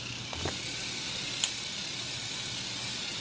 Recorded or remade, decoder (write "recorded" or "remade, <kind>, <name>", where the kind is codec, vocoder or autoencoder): recorded